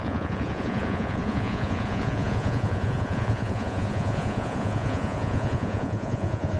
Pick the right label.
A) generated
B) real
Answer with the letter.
A